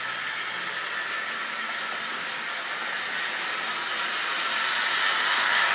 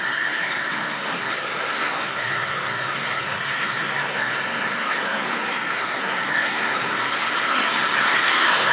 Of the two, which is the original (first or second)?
first